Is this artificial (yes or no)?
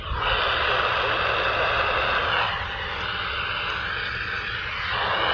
no